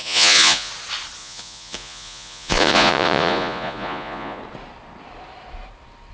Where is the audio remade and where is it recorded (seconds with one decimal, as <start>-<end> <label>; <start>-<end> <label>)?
0.0-0.7 remade; 0.7-1.2 recorded; 1.2-4.4 remade; 4.4-6.1 recorded